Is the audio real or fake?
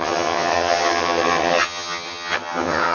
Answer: fake